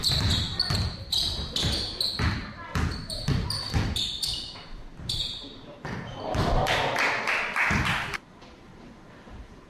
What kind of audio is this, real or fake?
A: fake